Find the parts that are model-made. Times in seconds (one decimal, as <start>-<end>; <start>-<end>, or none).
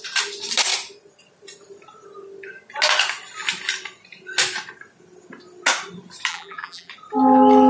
6.3-6.9